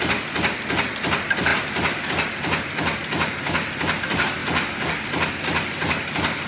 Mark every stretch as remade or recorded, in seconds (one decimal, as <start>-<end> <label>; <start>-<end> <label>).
0.0-6.5 recorded